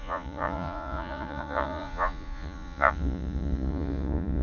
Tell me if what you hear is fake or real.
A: fake